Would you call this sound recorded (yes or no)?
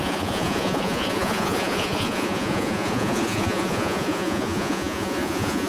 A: no